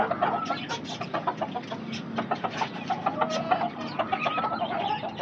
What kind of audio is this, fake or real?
real